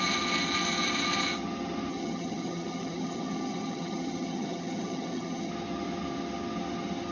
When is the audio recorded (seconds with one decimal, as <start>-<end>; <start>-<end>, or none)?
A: 0.0-1.9; 5.5-7.1